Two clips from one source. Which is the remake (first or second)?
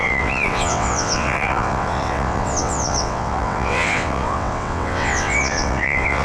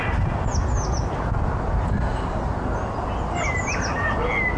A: first